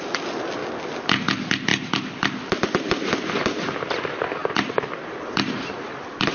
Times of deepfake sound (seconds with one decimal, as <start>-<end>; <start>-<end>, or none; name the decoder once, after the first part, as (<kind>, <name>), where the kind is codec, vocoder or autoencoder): none